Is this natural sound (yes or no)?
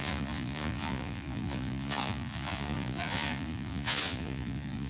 no